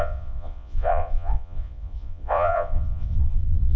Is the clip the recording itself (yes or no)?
no